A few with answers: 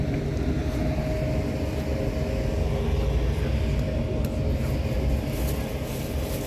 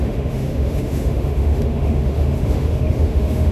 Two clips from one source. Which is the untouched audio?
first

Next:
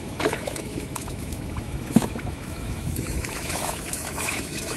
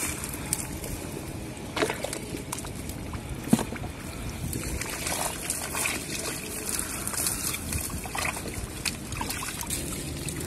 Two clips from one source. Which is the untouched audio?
second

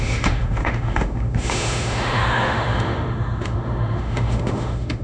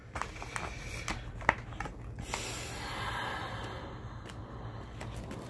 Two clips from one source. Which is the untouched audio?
second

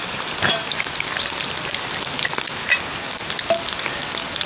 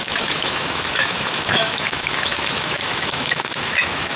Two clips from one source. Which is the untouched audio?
first